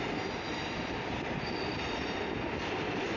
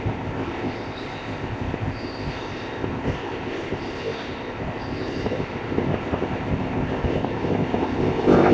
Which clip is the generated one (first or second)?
second